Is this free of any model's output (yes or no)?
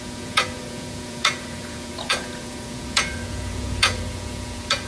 no